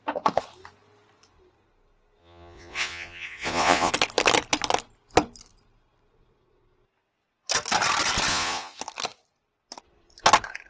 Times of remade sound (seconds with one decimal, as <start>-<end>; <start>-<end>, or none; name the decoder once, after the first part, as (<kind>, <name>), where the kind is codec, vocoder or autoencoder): 2.2-3.9 (vocoder, Vocos); 8.3-8.8